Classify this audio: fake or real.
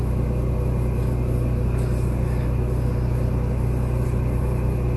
real